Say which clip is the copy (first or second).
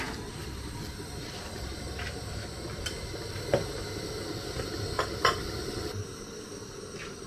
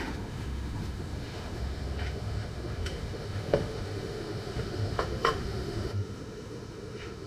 second